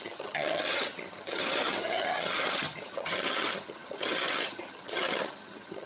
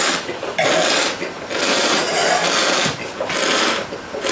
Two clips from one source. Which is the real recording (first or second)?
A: second